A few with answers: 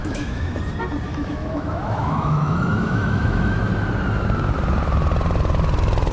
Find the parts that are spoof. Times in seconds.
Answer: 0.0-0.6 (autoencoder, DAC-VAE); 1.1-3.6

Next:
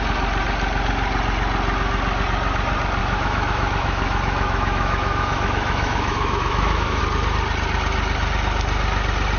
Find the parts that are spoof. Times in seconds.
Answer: 3.0-7.0 (autoencoder, DAC-VAE)